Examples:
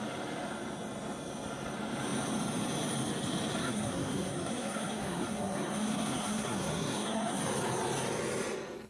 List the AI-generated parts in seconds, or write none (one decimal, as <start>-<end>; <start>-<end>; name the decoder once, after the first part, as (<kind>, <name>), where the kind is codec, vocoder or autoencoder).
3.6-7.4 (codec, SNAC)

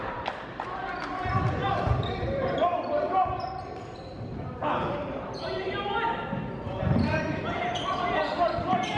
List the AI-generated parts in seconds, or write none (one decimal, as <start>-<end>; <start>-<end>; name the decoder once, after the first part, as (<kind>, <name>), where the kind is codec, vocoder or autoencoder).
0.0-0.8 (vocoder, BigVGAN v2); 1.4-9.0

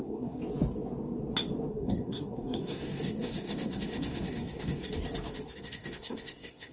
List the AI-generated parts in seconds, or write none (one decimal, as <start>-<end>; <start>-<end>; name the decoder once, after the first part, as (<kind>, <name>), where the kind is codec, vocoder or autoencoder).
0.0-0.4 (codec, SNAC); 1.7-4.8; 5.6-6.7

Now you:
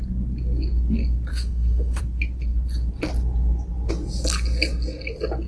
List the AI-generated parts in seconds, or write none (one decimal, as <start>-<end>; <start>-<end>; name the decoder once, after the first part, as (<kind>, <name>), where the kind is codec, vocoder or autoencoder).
1.3-2.0 (autoencoder, DAC-VAE)

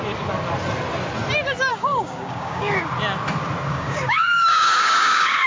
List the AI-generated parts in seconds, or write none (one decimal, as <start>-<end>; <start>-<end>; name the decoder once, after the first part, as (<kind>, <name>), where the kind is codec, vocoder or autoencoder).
1.7-2.8 (codec, DAC); 3.7-5.5